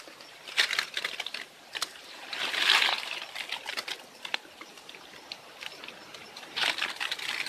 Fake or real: real